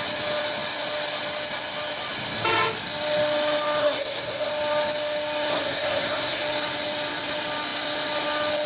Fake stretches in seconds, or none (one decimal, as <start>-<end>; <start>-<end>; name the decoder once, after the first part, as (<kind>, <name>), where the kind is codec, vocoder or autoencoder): 3.8-4.5 (codec, SNAC); 5.5-6.4